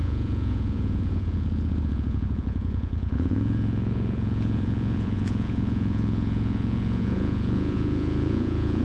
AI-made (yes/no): yes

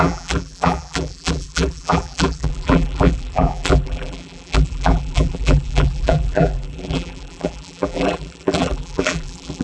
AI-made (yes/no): yes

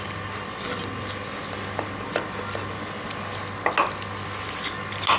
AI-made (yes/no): no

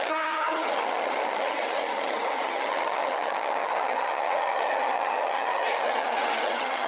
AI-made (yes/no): yes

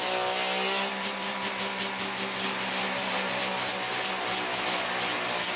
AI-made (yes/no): no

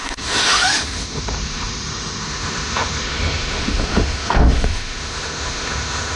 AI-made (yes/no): yes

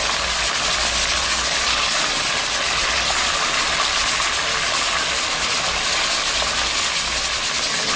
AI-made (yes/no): no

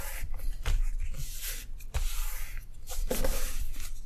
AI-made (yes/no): no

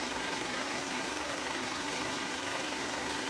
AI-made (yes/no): yes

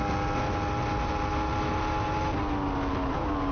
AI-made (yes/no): no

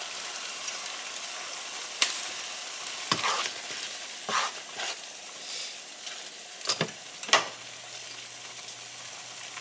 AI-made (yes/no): no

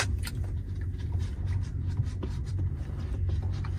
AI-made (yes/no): yes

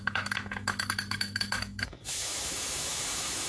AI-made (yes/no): yes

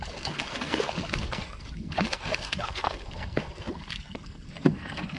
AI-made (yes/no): yes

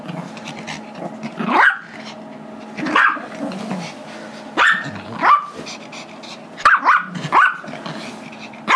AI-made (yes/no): no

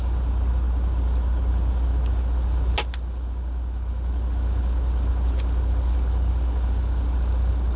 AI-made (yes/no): no